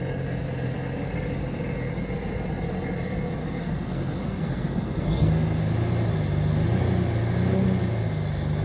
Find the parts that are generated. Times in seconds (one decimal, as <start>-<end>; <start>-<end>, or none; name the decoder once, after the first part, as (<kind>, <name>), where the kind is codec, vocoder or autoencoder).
3.4-5.6 (codec, SNAC)